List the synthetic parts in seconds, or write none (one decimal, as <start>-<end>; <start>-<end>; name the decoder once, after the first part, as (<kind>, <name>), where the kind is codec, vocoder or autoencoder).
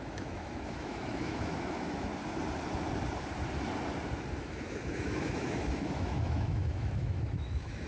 0.0-2.1 (autoencoder, DAC-VAE); 4.4-7.9